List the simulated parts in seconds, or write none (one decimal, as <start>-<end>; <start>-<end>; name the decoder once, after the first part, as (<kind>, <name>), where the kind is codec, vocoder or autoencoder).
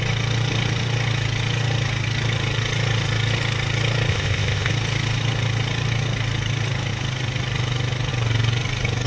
4.1-4.7 (codec, ZipCodec)